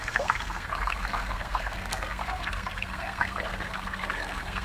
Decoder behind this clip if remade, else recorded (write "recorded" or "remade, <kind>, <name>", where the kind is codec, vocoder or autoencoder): remade, codec, SNAC